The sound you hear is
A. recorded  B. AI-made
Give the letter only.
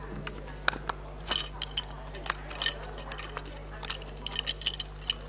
A